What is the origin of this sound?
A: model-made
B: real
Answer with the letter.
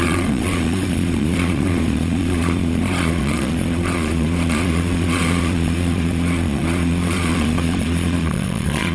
A